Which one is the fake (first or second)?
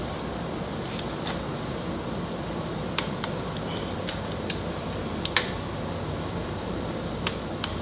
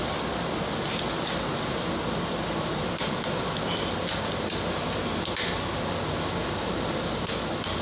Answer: first